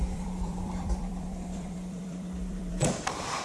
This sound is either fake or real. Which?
fake